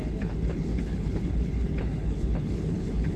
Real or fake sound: fake